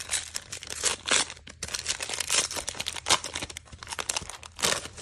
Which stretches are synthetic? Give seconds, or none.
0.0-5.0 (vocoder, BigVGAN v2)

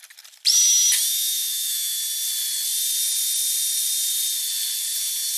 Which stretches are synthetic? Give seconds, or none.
1.1-2.0 (autoencoder, DAC-VAE)

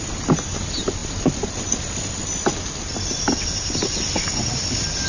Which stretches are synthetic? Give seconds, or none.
none